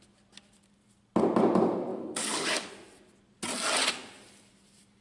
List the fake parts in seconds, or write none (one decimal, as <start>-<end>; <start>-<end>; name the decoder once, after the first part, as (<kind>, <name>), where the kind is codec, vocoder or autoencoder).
1.9-2.7 (codec, DAC)